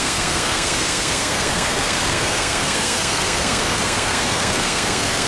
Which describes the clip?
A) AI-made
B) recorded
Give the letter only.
A